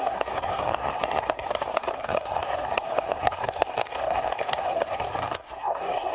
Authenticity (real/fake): fake